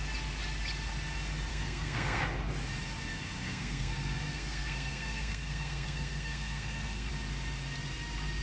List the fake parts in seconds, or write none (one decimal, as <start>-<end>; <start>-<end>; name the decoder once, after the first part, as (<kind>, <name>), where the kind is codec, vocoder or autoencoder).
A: 1.5-2.2 (codec, SNAC); 3.1-7.1